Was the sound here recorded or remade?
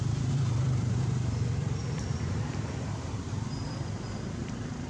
remade